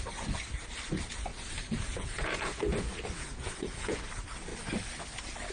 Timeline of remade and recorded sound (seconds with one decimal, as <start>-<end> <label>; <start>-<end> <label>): 0.0-1.3 recorded; 1.3-4.0 remade; 4.0-5.5 recorded